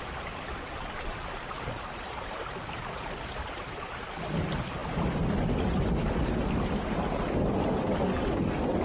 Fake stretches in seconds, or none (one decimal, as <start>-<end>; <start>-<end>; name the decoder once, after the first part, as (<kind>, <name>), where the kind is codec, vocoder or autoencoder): 4.8-5.9 (vocoder, BigVGAN v2)